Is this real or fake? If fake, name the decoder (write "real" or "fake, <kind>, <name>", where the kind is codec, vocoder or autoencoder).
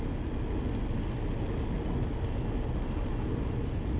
real